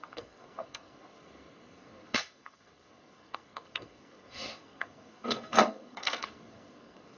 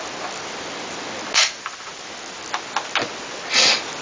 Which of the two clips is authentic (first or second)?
second